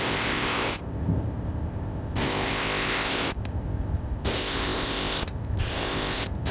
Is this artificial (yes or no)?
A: yes